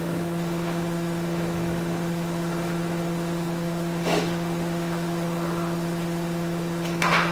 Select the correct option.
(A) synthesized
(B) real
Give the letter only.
A